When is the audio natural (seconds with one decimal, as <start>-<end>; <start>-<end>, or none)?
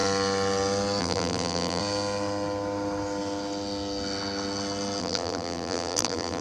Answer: 0.0-1.0; 1.8-5.0